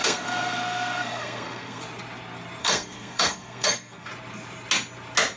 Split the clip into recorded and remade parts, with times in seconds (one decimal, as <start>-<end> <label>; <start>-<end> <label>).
0.0-1.8 remade; 1.8-2.6 recorded; 2.6-4.1 remade; 4.1-5.4 recorded